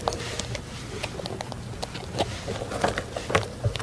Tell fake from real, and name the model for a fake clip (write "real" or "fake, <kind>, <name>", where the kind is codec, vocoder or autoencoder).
real